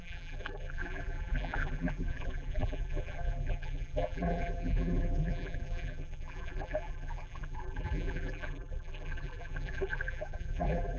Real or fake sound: fake